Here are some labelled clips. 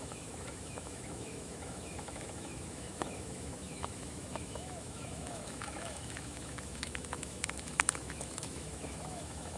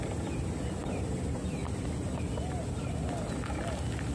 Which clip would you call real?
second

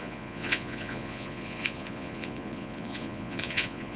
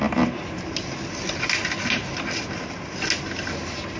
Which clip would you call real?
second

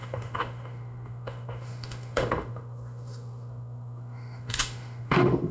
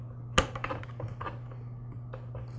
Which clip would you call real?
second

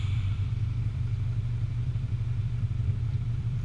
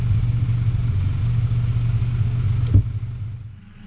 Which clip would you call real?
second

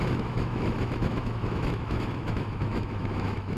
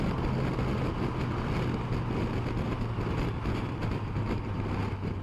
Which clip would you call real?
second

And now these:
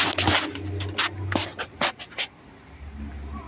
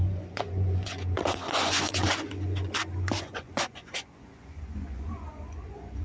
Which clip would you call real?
first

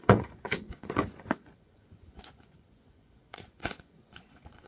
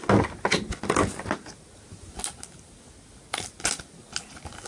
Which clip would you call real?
second